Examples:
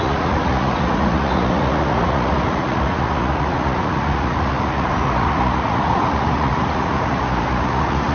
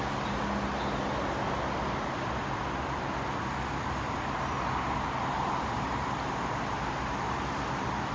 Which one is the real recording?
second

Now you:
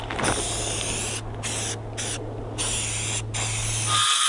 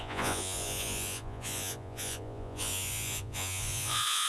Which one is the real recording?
first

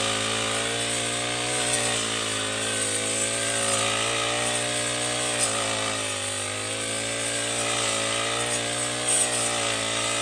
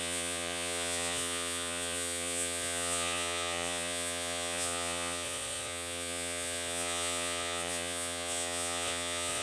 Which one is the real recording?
first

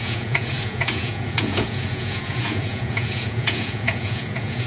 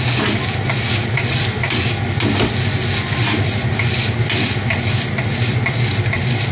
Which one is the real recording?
second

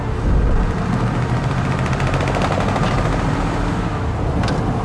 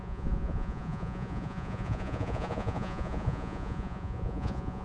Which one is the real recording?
first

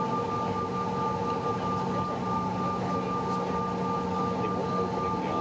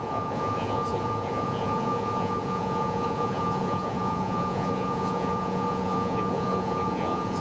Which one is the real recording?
first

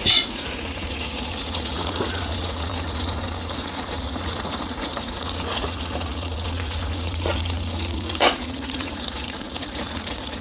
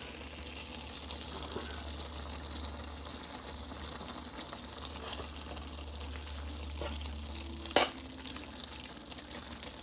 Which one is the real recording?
second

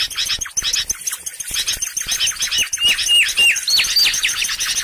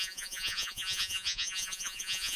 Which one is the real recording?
first